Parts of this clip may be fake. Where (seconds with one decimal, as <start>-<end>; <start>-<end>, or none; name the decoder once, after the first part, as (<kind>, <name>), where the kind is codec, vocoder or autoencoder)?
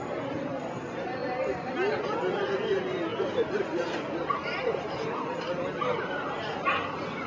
0.0-7.3 (vocoder, BigVGAN v2)